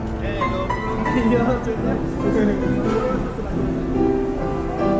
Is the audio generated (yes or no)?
no